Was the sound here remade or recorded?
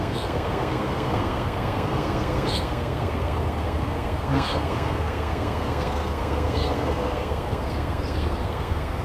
remade